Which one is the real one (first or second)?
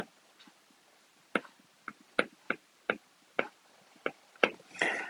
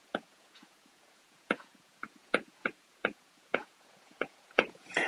first